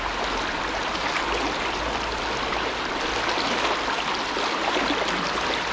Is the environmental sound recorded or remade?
recorded